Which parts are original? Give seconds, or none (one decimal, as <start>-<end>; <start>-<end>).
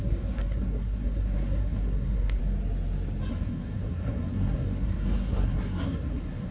2.4-3.3